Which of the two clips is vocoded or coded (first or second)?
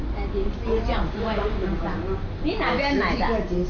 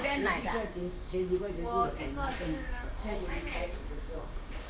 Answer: second